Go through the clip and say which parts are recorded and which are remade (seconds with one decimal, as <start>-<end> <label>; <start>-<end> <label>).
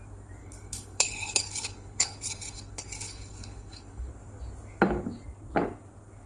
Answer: 0.0-0.4 recorded; 0.4-4.1 remade; 4.1-6.3 recorded